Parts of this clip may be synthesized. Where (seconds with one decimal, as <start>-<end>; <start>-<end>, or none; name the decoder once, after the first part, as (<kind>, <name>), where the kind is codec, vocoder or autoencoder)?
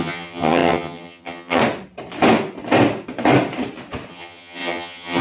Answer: 0.0-1.6 (vocoder, HiFi-GAN); 4.1-5.2